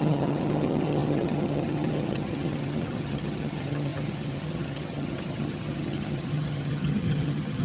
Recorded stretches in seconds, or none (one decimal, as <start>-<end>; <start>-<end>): none